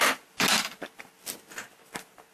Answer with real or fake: real